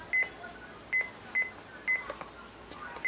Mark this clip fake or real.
real